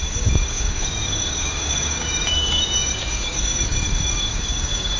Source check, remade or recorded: remade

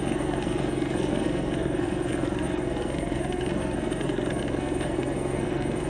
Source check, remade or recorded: remade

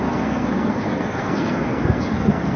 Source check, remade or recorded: remade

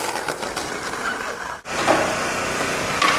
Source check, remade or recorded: recorded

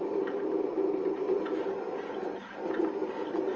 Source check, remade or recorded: recorded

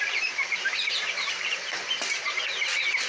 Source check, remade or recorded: remade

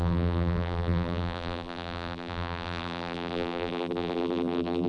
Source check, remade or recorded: remade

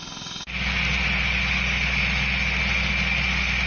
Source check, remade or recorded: recorded